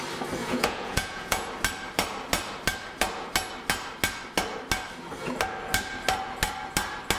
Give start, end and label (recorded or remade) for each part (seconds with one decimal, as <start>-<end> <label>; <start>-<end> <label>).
0.0-0.4 recorded; 0.4-1.5 remade; 1.5-7.2 recorded